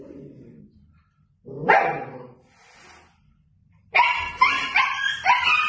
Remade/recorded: recorded